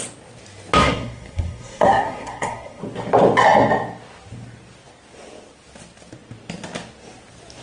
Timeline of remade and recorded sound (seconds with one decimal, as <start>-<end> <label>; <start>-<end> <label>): 0.0-0.8 recorded; 0.8-2.8 remade; 2.8-7.6 recorded